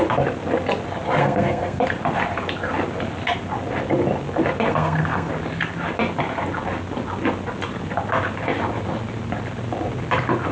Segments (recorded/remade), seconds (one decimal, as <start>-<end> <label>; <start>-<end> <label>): 0.0-1.2 recorded; 1.2-1.8 remade; 1.8-4.7 recorded; 4.7-5.3 remade; 5.3-10.5 recorded